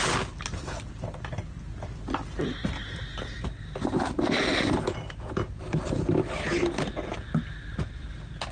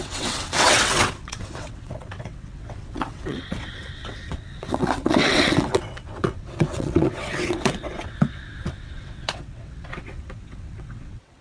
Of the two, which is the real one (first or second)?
first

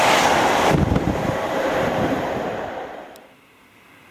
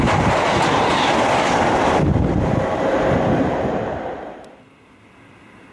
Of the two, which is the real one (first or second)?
second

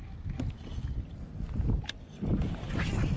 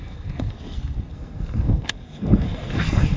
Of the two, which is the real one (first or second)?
first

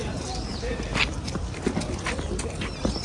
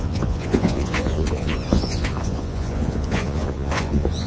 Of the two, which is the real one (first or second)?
first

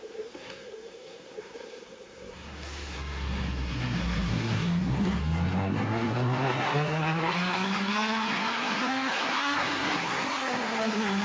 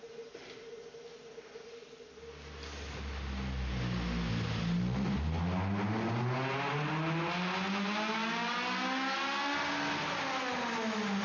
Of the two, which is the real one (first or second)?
second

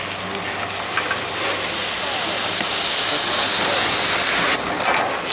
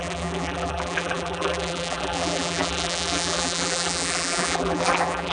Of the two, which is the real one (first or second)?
first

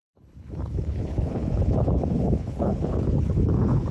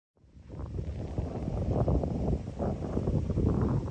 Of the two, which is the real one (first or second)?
second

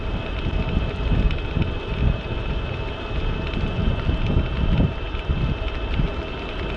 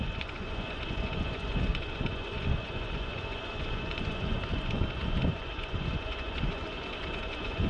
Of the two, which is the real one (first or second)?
first